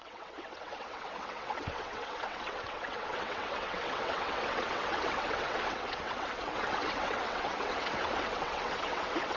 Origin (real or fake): fake